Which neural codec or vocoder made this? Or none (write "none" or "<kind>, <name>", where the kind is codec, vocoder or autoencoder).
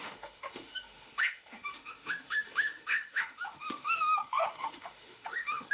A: autoencoder, DAC-VAE